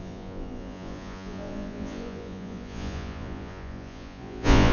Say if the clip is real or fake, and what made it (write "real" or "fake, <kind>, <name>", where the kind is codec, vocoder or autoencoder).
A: fake, vocoder, Vocos